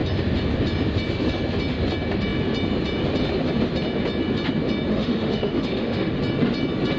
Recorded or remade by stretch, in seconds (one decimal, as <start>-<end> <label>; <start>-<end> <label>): 0.0-4.9 recorded; 4.9-6.2 remade; 6.2-7.0 recorded